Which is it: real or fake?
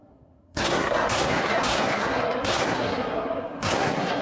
fake